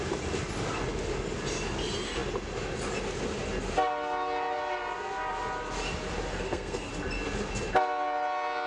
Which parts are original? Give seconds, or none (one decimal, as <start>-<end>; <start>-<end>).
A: 0.0-6.3; 6.9-8.7